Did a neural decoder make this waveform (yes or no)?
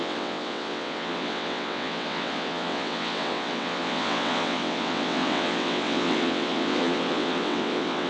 yes